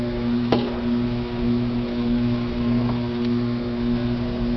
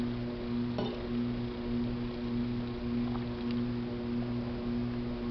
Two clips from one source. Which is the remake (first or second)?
first